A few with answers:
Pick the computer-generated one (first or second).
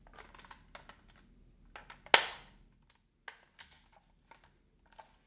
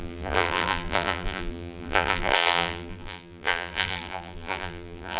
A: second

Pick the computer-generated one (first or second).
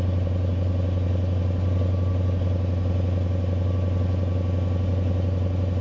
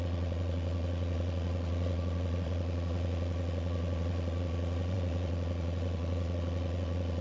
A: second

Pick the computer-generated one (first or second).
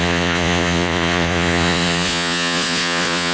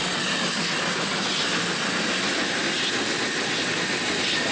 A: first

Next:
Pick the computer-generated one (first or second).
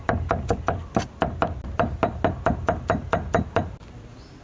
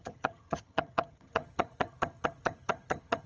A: second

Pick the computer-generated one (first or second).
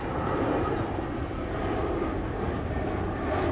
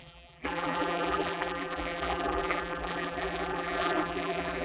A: second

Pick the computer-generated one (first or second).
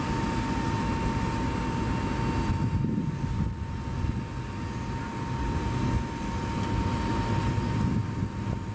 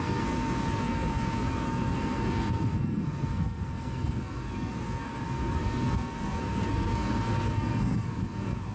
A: second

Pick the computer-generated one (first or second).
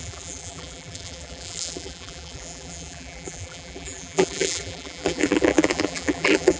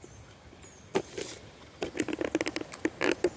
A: first